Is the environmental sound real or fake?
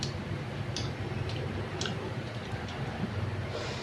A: fake